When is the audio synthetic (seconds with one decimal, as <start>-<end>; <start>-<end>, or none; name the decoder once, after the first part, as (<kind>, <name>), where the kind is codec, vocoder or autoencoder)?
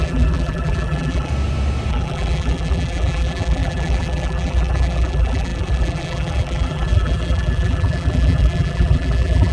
0.0-1.3 (vocoder, BigVGAN v2); 1.9-9.5